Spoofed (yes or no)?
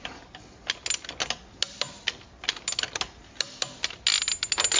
no